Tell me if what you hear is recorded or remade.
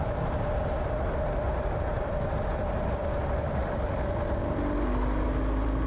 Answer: recorded